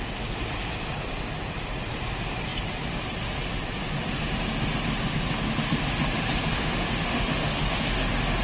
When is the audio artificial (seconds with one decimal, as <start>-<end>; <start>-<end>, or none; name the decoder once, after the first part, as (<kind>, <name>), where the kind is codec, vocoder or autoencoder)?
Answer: 6.5-7.8 (autoencoder, DAC-VAE)

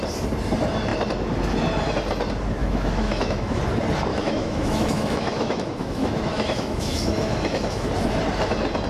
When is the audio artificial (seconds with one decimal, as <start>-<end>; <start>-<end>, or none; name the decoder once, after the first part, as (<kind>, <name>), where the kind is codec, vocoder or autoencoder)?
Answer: 2.6-3.6 (autoencoder, DAC-VAE); 4.1-7.9